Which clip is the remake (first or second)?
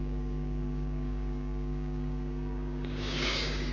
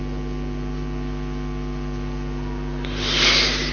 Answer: first